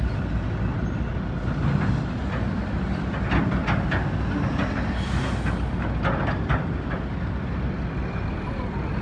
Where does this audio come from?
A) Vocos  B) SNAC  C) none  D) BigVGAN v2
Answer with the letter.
C